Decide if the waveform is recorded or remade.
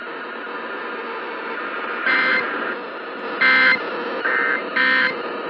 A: recorded